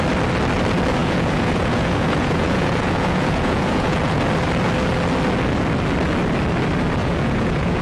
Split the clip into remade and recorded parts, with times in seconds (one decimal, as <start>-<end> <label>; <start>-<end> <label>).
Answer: 0.0-1.0 recorded; 1.0-4.2 remade; 4.2-7.0 recorded; 7.0-7.8 remade